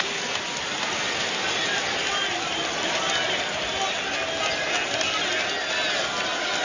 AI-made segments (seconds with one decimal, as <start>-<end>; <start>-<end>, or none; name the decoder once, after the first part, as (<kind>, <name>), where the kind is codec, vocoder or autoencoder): 2.0-4.4 (vocoder, BigVGAN v2)